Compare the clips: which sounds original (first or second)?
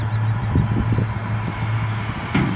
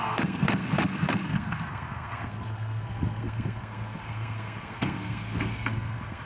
first